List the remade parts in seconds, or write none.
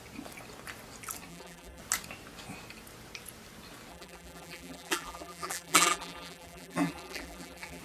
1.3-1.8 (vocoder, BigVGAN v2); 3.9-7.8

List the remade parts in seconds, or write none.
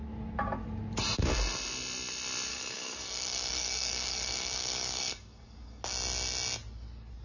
2.5-5.8 (codec, DAC)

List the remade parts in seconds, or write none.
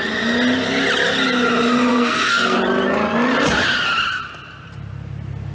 1.9-2.6 (codec, SNAC)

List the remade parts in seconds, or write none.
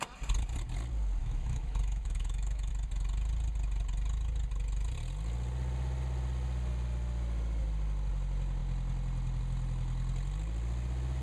1.2-2.7 (autoencoder, DAC-VAE)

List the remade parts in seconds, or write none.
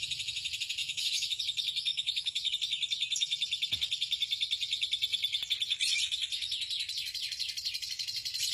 0.8-1.4 (autoencoder, DAC-VAE); 1.9-2.5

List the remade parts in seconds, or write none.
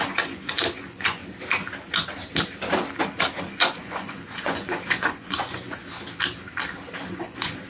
0.0-1.2 (vocoder, Vocos); 3.4-5.8; 7.1-7.7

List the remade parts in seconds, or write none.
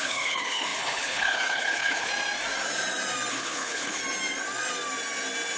0.0-2.1 (codec, HILCodec); 3.3-4.0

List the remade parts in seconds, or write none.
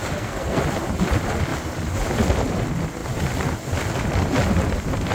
0.0-0.6 (codec, SNAC)